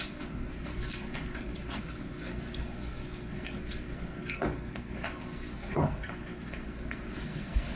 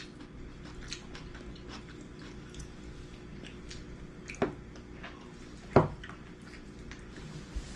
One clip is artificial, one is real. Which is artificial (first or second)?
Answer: first